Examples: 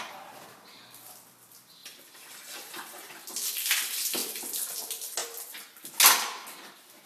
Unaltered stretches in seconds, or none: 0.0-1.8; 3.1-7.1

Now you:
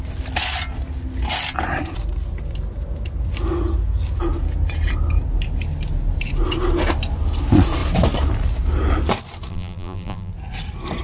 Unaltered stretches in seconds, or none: 0.0-9.5; 10.3-11.0

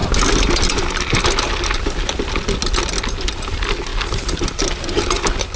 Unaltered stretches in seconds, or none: 0.0-3.9; 4.4-5.6

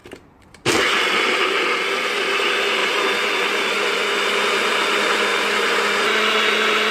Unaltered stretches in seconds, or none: 0.7-6.9

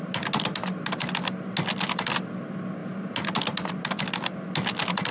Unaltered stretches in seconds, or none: 0.0-5.1